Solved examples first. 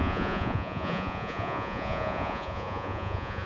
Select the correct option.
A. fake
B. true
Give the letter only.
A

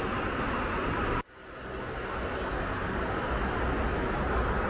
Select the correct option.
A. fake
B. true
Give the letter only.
B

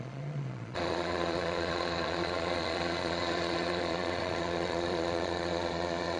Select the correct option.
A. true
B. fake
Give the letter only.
B